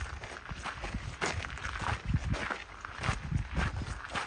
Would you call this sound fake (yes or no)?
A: no